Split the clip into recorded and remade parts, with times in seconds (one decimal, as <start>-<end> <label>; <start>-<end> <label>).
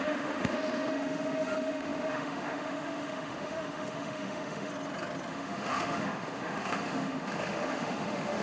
0.0-4.7 remade; 4.7-5.3 recorded; 5.3-8.4 remade